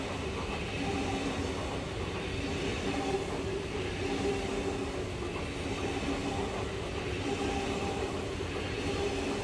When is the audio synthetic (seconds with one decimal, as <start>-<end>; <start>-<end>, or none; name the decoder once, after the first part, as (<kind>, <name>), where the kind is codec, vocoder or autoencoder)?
none